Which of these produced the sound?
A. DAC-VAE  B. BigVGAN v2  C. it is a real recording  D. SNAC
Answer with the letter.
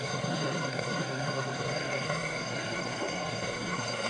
D